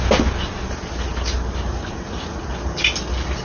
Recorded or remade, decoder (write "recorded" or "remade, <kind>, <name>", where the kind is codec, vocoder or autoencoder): recorded